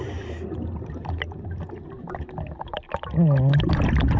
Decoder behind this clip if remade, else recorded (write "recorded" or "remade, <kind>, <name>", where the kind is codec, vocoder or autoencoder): recorded